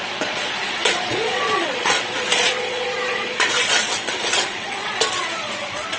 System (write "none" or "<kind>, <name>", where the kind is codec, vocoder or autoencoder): vocoder, Vocos